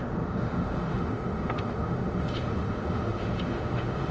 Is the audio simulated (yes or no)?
yes